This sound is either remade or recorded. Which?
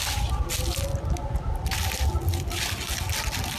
recorded